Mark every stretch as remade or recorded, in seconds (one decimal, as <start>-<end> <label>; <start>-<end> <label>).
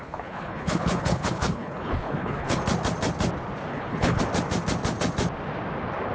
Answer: 0.0-2.6 remade; 2.6-3.7 recorded; 3.7-4.2 remade; 4.2-6.1 recorded